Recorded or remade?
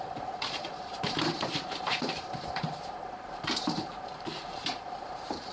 remade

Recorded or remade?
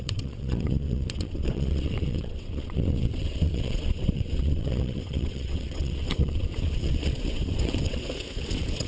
remade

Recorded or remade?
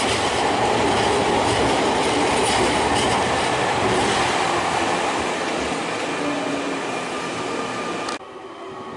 recorded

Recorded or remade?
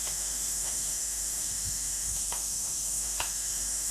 remade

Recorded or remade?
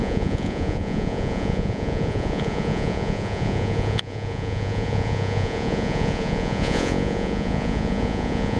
remade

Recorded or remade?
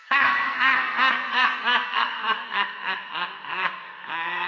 remade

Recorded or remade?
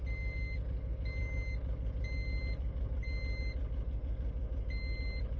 recorded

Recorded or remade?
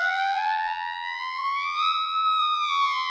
remade